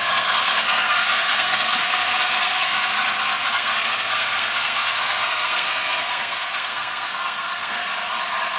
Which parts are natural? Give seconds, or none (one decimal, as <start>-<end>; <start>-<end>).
2.9-3.5; 7.8-8.6